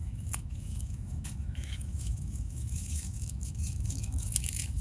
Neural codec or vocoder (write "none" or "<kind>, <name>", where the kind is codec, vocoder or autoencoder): autoencoder, DAC-VAE